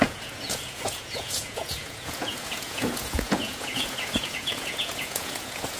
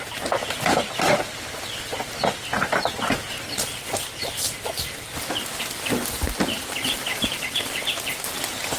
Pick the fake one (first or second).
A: first